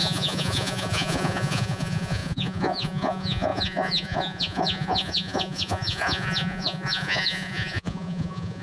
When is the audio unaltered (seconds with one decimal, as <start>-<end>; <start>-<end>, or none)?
none